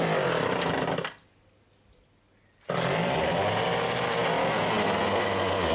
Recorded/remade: recorded